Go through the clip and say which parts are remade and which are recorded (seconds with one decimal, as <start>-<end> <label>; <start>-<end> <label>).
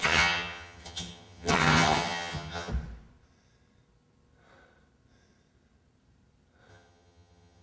0.0-2.7 remade; 2.7-6.7 recorded; 6.7-7.6 remade